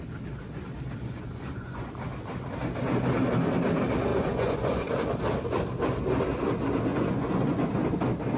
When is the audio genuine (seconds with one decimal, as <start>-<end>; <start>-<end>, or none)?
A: 0.0-1.0; 1.9-4.1; 4.9-6.9; 7.7-8.4